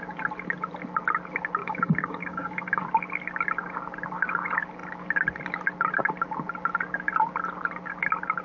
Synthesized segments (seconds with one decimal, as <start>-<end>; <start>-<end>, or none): 1.6-2.8